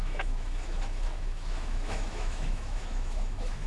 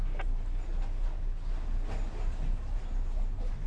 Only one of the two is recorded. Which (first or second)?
second